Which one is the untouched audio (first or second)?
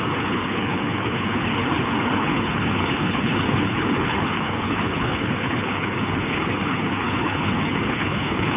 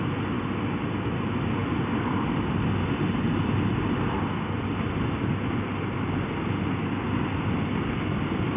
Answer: second